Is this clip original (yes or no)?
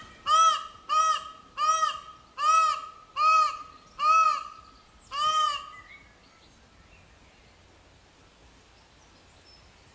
yes